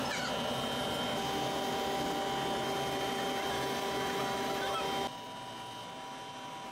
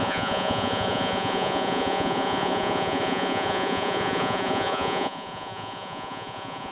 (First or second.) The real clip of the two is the first